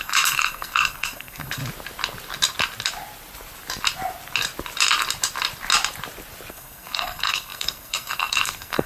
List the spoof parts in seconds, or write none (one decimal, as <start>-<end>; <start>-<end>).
0.0-1.6; 6.5-8.9

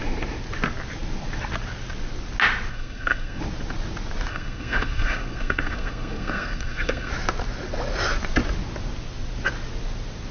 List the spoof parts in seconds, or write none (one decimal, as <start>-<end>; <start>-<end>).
2.7-3.4; 4.3-7.1

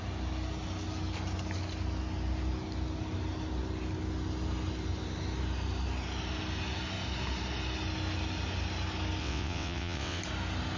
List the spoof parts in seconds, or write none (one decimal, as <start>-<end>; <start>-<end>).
9.2-10.2

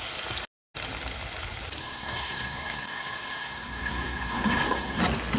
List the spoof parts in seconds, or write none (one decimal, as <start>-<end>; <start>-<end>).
1.8-5.0

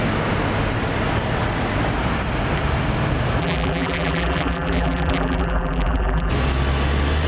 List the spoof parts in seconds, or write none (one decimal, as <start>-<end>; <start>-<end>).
3.4-6.3

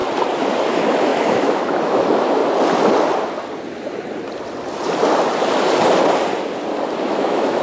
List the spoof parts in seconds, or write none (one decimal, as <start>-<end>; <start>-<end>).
0.7-2.4; 7.0-7.6

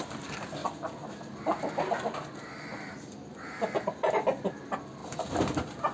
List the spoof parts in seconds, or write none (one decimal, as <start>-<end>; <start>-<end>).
none

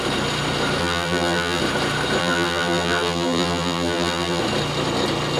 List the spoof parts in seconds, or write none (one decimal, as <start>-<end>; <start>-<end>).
0.8-1.6; 2.2-4.4